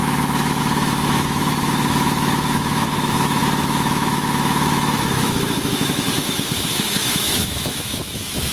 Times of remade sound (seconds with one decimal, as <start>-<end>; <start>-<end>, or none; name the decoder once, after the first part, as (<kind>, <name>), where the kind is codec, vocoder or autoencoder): 0.0-8.5 (autoencoder, DAC-VAE)